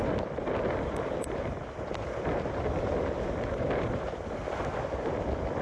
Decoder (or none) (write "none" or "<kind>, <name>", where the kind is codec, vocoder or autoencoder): none